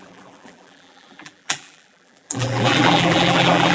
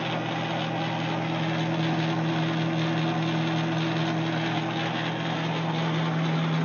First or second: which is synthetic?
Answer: first